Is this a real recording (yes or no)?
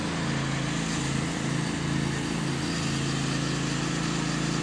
yes